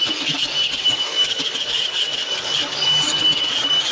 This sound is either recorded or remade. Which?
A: remade